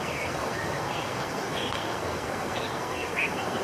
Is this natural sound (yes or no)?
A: no